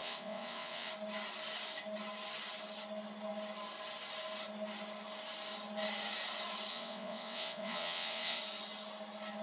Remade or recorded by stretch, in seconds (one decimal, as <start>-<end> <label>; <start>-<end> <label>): 0.0-0.9 remade; 0.9-6.7 recorded; 6.7-8.4 remade; 8.4-9.4 recorded